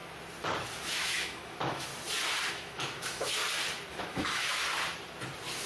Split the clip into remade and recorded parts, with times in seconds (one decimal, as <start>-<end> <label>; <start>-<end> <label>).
0.0-0.8 recorded; 0.8-1.9 remade; 1.9-2.5 recorded; 2.5-3.4 remade; 3.4-3.9 recorded; 3.9-4.6 remade; 4.6-5.7 recorded